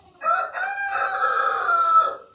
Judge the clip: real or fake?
real